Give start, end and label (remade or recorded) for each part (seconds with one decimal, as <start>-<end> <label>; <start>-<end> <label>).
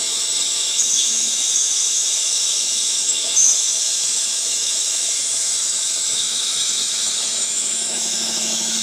0.0-8.8 remade